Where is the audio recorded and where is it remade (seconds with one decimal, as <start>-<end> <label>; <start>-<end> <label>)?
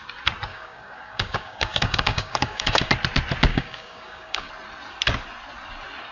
0.0-0.5 recorded; 0.5-2.9 remade; 2.9-3.5 recorded; 3.5-4.5 remade; 4.5-6.1 recorded